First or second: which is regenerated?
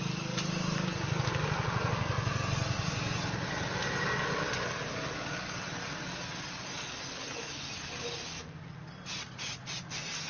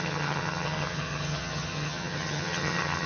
second